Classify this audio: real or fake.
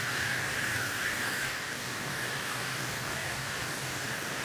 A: fake